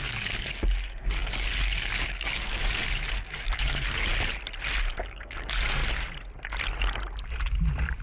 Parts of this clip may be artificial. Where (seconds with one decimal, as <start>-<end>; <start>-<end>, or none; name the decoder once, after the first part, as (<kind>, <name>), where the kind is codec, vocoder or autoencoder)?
0.0-4.1 (codec, DAC); 4.9-5.8